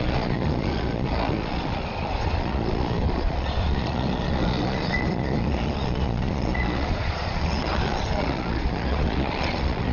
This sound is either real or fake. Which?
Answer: fake